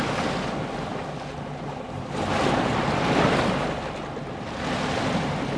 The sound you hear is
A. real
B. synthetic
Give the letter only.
A